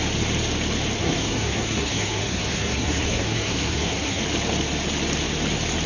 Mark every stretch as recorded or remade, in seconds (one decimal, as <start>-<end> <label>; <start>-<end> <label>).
0.0-1.0 recorded; 1.0-4.2 remade; 4.2-5.9 recorded

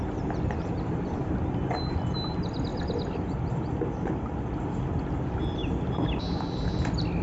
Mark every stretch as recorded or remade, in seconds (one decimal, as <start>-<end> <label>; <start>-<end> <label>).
0.0-7.2 recorded

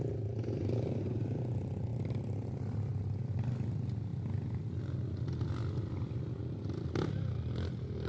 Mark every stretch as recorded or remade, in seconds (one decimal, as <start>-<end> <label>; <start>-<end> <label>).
0.0-8.1 recorded

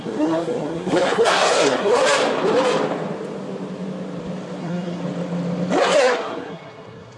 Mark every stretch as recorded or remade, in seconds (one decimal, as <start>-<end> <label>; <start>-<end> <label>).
0.0-2.0 remade; 2.0-4.6 recorded; 4.6-5.0 remade; 5.0-5.8 recorded; 5.8-7.2 remade

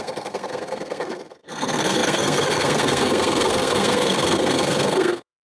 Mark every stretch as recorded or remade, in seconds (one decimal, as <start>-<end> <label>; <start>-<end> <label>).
0.0-5.5 remade

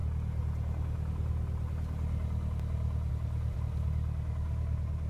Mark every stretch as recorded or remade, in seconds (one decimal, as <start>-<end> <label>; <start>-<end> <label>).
0.0-5.1 recorded